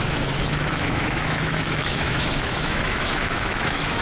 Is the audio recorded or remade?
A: remade